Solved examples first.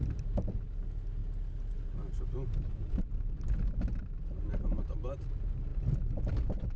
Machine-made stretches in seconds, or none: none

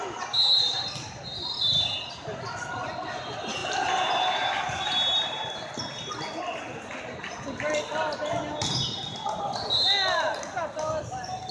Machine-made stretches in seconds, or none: none

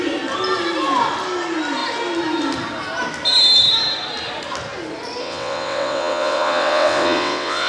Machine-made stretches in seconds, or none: 5.2-7.7

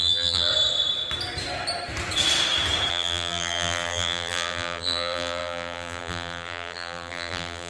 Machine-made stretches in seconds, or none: 0.0-0.5; 2.9-7.7